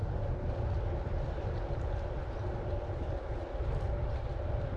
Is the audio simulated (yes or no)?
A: no